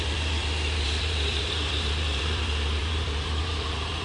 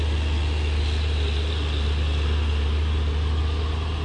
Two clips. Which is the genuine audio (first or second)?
second